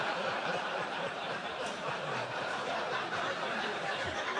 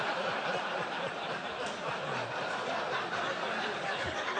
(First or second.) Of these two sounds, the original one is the second